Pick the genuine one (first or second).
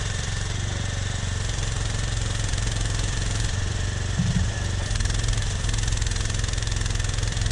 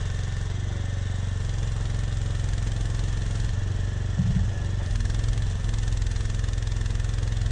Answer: second